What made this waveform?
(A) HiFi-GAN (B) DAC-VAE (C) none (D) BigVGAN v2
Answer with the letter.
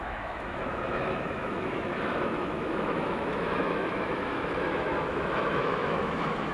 B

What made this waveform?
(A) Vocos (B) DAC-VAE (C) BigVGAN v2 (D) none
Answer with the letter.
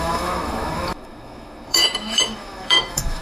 B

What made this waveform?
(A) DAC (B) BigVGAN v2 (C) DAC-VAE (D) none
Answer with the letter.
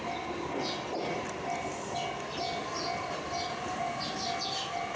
D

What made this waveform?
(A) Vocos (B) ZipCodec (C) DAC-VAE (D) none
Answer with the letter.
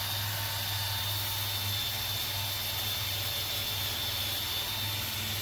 D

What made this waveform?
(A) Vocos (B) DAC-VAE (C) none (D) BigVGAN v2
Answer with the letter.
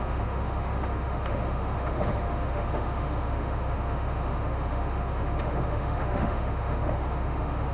B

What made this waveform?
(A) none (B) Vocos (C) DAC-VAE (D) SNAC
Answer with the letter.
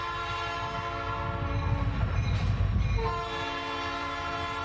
A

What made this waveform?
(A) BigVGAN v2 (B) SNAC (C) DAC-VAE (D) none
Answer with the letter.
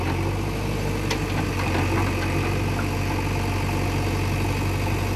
D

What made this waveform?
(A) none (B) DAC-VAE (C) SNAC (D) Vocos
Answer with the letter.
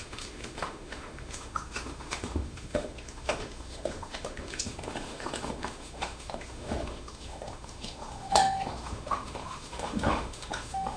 B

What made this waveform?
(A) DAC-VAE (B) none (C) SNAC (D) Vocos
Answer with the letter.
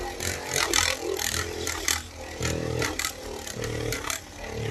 B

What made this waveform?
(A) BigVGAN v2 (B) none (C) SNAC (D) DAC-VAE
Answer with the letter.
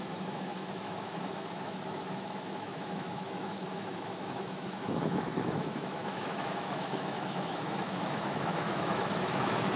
D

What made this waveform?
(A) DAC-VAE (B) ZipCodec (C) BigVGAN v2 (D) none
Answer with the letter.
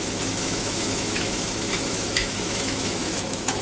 A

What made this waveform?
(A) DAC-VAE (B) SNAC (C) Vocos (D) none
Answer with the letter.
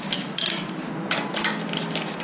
D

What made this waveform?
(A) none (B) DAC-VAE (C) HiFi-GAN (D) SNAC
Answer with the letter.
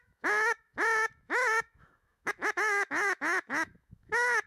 B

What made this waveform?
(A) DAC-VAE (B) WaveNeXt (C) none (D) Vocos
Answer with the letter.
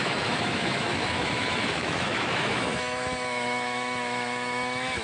A